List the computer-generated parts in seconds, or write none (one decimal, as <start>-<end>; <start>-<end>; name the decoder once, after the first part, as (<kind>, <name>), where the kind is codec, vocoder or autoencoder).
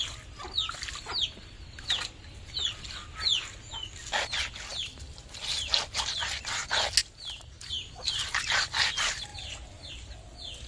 none